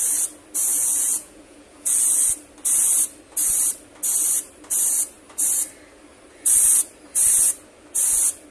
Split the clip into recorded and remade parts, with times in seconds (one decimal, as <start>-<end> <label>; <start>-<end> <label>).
0.0-0.7 recorded; 0.7-2.0 remade; 2.0-8.5 recorded